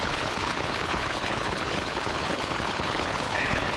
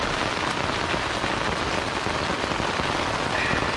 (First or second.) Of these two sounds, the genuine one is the second